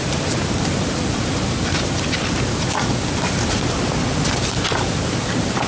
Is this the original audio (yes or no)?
yes